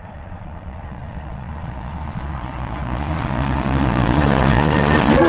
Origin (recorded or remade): remade